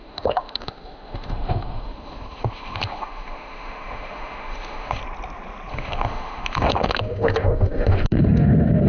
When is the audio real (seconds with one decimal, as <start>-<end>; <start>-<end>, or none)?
5.0-5.7